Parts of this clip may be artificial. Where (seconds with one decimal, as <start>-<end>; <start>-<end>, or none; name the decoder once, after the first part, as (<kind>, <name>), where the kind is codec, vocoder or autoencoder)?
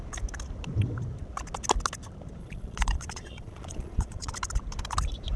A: 2.4-4.3 (vocoder, Vocos)